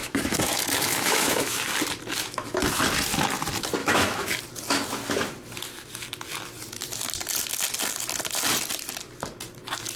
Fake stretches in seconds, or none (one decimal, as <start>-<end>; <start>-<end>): 0.0-1.6; 2.2-2.8; 3.8-4.4